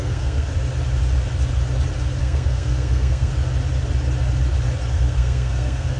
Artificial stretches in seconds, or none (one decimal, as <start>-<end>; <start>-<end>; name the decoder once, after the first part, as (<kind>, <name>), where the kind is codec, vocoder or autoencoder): 0.0-0.5 (codec, SNAC); 2.2-3.3; 4.9-6.0